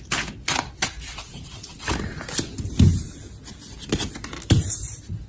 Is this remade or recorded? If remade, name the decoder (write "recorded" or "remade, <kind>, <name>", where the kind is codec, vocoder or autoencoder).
recorded